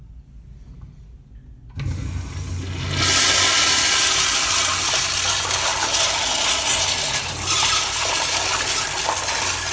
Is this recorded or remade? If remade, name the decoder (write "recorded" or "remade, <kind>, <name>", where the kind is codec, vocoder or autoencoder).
recorded